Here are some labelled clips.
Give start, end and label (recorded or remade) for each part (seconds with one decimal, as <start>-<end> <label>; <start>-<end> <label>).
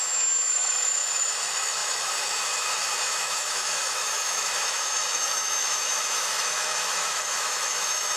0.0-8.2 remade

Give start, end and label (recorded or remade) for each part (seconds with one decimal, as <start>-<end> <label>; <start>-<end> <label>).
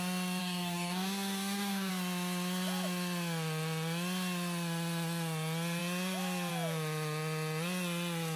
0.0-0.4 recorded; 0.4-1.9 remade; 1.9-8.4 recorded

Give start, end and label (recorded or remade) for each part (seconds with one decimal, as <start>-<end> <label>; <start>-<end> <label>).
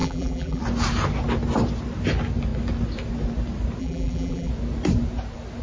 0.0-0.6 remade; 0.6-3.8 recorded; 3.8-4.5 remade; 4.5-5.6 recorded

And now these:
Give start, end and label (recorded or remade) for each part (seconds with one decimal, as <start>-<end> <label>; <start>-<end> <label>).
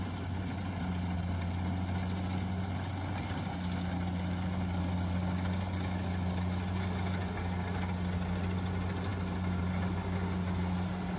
0.0-11.2 recorded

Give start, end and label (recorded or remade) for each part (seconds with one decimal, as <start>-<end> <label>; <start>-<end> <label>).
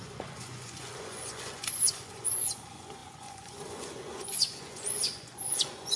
0.0-6.0 remade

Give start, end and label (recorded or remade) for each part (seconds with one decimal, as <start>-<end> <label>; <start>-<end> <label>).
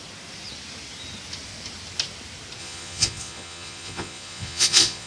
0.0-2.6 recorded; 2.6-5.1 remade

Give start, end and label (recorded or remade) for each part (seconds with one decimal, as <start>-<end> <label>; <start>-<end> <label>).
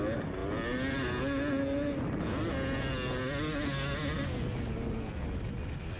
0.0-6.0 recorded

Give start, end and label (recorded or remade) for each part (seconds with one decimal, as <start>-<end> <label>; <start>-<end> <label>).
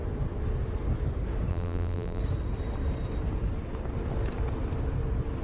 0.0-1.5 recorded; 1.5-2.2 remade; 2.2-5.4 recorded